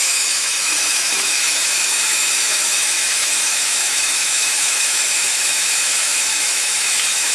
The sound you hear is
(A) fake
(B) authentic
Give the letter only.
A